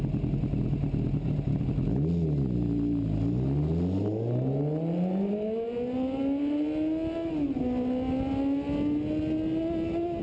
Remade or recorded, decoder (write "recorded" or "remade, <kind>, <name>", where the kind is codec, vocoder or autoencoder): recorded